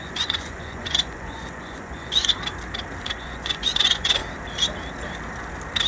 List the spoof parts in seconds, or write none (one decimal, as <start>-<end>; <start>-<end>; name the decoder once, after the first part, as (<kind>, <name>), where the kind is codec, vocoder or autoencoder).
0.0-2.3 (vocoder, Vocos); 3.0-4.2